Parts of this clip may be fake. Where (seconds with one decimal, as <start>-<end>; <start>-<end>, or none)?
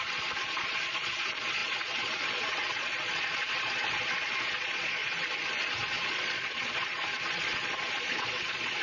0.0-5.0; 5.7-8.8